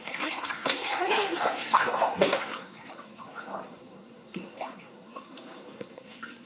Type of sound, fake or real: fake